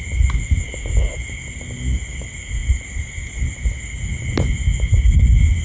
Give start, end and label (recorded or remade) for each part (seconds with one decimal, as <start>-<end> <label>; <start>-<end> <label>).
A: 0.0-5.6 recorded